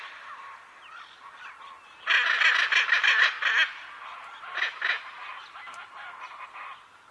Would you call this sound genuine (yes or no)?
yes